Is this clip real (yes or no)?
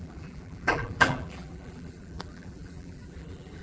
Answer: no